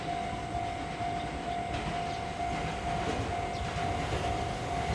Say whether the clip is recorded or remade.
recorded